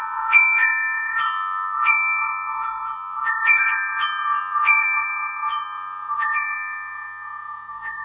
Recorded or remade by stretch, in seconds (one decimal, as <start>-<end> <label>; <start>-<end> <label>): 0.0-8.0 remade